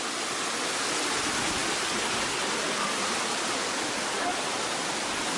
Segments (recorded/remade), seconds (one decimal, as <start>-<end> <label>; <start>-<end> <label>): 0.0-5.4 recorded